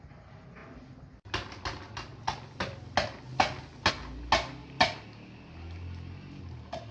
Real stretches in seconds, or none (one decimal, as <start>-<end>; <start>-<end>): 0.0-6.9